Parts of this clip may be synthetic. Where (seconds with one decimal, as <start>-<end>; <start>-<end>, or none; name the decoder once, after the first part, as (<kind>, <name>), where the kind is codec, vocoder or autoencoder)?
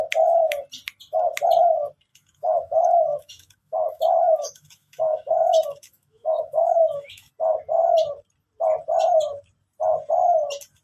2.1-7.3 (autoencoder, DAC-VAE)